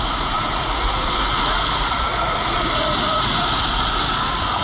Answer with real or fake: fake